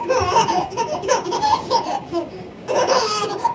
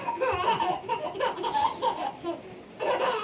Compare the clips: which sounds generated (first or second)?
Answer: first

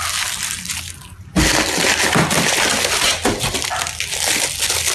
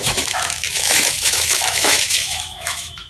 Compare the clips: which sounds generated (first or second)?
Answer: second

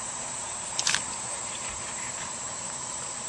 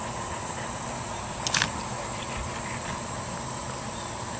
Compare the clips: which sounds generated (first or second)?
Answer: first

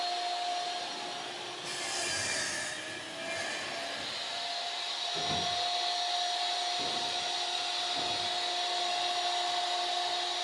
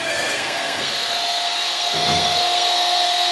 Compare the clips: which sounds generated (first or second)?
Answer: second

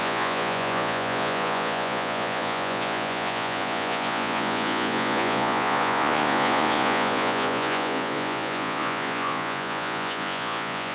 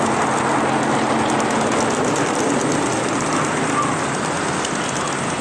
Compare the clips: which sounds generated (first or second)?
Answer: first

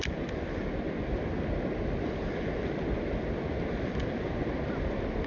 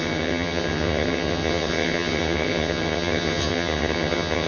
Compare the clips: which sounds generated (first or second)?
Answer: second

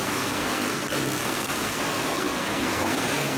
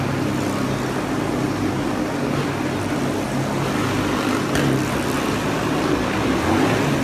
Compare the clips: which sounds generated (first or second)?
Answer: first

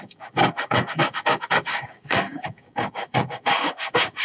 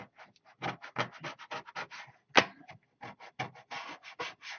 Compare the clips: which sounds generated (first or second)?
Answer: first